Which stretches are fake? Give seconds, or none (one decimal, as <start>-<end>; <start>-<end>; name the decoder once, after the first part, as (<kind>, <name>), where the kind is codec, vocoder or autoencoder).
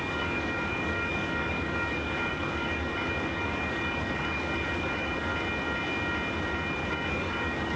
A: 0.0-5.3 (codec, DAC); 6.9-7.8